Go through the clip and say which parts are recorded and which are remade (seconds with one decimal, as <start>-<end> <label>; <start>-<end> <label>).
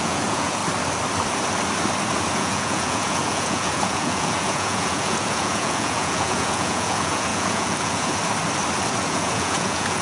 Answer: 0.0-0.6 remade; 0.6-2.3 recorded; 2.3-8.2 remade; 8.2-9.0 recorded; 9.0-10.0 remade